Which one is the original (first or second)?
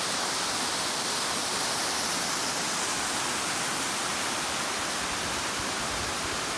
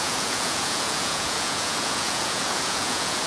first